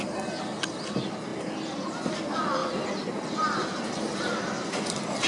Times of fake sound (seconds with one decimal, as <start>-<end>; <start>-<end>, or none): 2.6-5.3